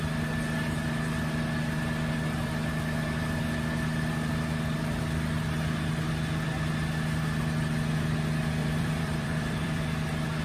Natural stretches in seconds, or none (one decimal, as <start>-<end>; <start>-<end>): 0.0-8.6; 9.8-10.4